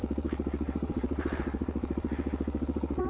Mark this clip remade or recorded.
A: remade